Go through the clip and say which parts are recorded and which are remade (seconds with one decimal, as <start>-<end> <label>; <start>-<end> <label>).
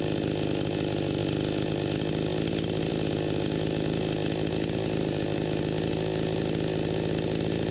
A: 0.0-7.7 recorded